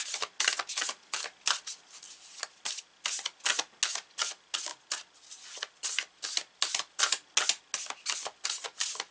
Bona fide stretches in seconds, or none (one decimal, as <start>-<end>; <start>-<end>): 0.0-9.1